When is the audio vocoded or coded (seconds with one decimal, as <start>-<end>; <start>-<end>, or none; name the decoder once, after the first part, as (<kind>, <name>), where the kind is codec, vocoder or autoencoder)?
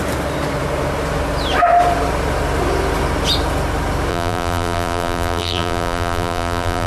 4.1-6.9 (vocoder, BigVGAN v2)